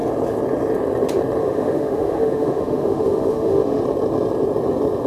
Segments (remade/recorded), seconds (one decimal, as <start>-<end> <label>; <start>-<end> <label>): 0.0-1.4 recorded; 1.4-3.8 remade; 3.8-5.1 recorded